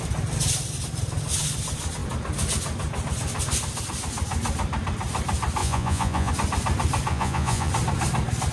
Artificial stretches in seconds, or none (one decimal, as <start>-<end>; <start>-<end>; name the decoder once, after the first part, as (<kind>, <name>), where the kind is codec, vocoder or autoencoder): 5.6-6.3 (vocoder, Vocos); 7.1-7.7